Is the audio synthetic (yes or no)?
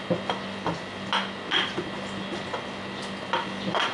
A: no